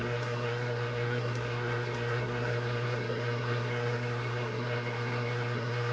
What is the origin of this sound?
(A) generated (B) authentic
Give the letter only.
A